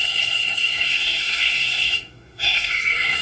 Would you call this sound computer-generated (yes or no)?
yes